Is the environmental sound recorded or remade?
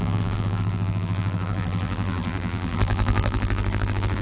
remade